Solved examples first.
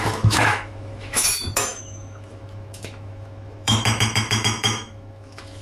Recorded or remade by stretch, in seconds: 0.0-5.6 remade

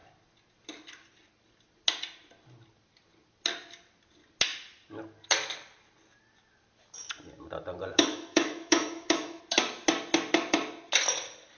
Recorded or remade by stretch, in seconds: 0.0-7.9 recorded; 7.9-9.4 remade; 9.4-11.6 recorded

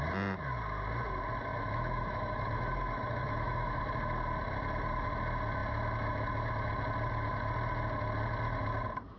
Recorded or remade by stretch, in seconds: 0.0-1.5 recorded; 1.5-3.8 remade; 3.8-9.2 recorded